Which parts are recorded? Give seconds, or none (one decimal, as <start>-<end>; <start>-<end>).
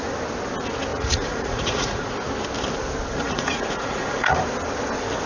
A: 0.0-0.9; 2.1-3.1; 4.4-5.3